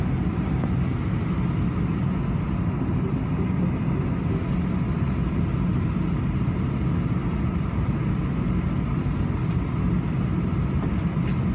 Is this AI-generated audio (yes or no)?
no